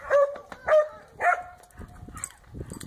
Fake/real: real